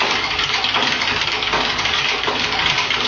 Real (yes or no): no